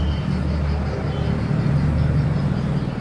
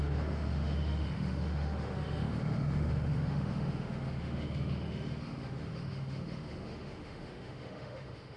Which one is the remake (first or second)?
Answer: second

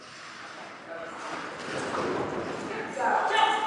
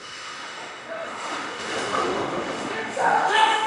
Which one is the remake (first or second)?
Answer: second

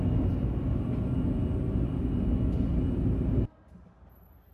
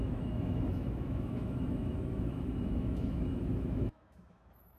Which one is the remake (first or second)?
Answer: second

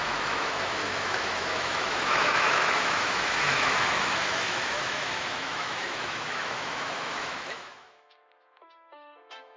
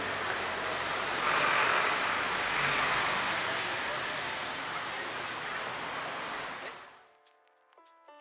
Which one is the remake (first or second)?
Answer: first